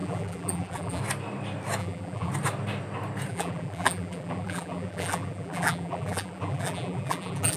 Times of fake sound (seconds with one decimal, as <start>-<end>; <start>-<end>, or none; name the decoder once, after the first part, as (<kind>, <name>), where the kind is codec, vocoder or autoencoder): 0.0-1.0 (vocoder, BigVGAN v2); 1.8-2.3; 3.3-7.6